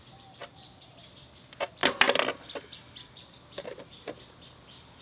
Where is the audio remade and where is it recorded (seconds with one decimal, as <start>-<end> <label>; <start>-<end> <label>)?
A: 0.0-0.4 recorded; 0.4-0.9 remade; 0.9-5.0 recorded